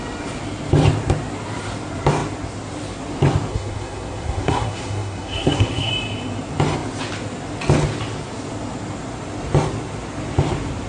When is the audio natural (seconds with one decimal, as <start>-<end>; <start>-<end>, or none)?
0.0-3.5; 5.9-10.9